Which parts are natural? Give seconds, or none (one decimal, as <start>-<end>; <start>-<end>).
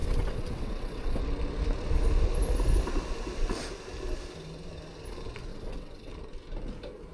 1.2-5.5; 6.1-7.1